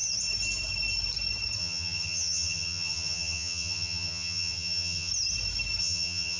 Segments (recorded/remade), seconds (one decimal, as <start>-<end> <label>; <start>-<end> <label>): 0.0-1.6 recorded; 1.6-5.1 remade; 5.1-5.8 recorded; 5.8-6.4 remade